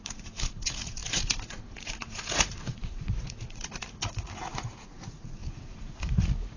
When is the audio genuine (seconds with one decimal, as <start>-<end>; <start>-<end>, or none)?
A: none